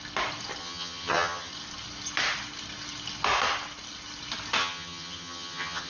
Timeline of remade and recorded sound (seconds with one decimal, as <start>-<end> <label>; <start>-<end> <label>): 0.0-0.6 recorded; 0.6-1.5 remade; 1.5-4.6 recorded; 4.6-5.9 remade